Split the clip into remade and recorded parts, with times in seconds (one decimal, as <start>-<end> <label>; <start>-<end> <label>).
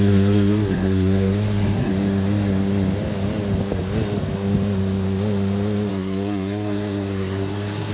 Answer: 0.0-1.9 remade; 1.9-5.9 recorded; 5.9-7.9 remade